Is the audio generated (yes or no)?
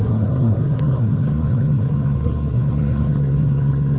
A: yes